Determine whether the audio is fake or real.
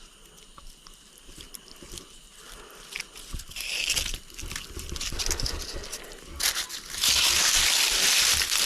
real